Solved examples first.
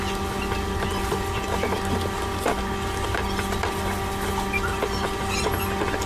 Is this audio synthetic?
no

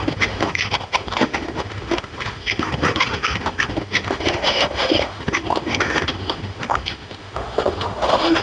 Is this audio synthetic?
yes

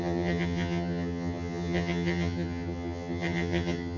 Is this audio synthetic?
yes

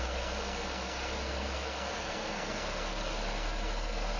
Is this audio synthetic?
yes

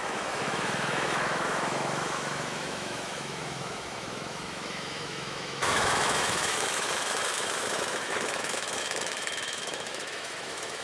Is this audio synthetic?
yes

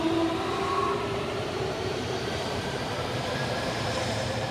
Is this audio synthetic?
yes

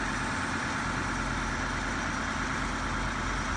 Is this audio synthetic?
no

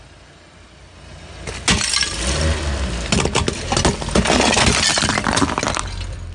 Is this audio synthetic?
no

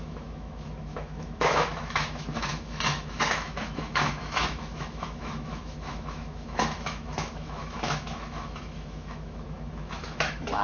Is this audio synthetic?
yes